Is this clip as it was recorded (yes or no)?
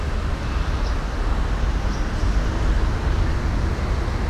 yes